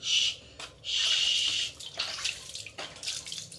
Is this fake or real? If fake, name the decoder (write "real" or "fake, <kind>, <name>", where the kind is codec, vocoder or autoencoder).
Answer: real